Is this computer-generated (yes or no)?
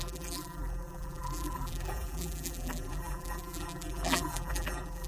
yes